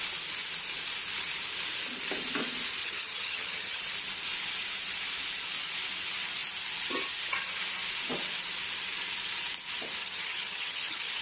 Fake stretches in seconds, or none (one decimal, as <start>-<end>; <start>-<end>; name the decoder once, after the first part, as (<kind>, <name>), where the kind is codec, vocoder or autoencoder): 2.8-3.8 (vocoder, HiFi-GAN); 10.0-11.2

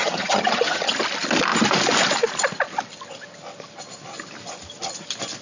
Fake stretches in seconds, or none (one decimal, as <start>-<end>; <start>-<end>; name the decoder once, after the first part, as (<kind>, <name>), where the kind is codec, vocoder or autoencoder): 0.0-0.9 (vocoder, HiFi-GAN)

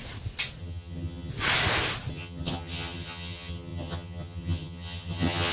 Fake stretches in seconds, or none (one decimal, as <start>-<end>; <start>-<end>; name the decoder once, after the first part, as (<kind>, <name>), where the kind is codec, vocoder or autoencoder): 0.6-1.3 (vocoder, HiFi-GAN); 2.1-5.5

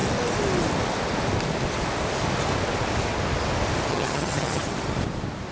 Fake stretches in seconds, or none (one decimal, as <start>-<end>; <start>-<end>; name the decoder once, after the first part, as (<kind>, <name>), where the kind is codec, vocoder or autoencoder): 3.9-4.6 (vocoder, HiFi-GAN)

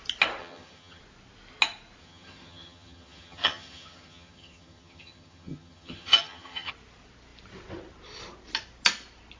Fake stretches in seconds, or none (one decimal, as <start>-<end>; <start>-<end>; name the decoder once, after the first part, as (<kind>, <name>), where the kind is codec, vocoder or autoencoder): 0.4-1.0 (vocoder, HiFi-GAN); 2.0-6.7